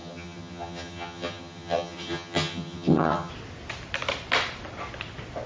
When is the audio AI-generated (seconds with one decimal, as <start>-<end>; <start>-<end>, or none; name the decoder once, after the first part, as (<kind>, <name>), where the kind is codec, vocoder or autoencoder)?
0.0-3.3 (vocoder, HiFi-GAN)

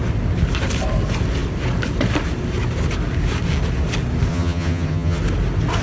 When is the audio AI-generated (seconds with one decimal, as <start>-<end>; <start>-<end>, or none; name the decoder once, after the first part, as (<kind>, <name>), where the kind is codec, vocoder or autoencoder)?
4.3-5.2 (vocoder, HiFi-GAN)

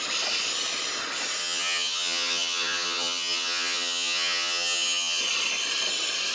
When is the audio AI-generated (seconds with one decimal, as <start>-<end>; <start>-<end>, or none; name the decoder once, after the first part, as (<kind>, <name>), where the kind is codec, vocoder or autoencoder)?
1.4-5.2 (vocoder, HiFi-GAN)

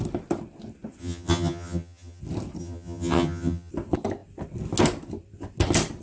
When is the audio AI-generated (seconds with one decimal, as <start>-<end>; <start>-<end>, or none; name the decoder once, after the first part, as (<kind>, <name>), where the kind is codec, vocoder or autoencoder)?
1.0-2.2 (vocoder, HiFi-GAN); 2.6-3.7

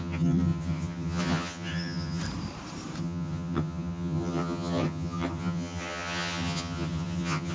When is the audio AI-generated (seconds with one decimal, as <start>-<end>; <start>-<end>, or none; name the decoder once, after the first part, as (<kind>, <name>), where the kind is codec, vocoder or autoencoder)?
0.0-2.2 (vocoder, HiFi-GAN); 3.0-7.5

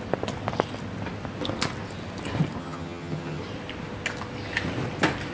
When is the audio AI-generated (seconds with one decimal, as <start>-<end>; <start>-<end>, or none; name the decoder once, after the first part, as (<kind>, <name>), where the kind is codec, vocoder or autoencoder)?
2.6-3.4 (vocoder, HiFi-GAN)

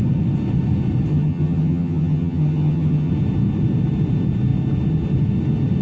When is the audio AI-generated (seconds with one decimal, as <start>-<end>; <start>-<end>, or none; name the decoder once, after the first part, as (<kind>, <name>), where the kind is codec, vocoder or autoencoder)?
1.1-3.1 (vocoder, HiFi-GAN)

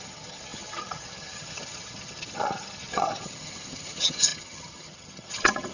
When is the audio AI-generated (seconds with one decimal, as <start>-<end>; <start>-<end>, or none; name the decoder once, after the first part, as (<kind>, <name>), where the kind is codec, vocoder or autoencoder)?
0.0-5.7 (vocoder, HiFi-GAN)